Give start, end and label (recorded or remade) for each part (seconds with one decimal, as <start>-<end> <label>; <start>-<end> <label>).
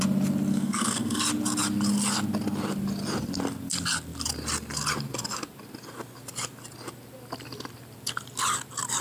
0.0-0.5 recorded; 0.5-1.2 remade; 1.2-9.0 recorded